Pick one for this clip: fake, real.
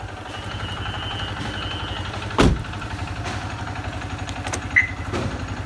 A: real